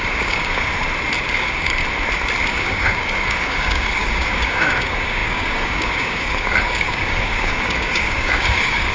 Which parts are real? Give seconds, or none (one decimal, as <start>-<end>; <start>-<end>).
0.7-1.3; 1.8-2.5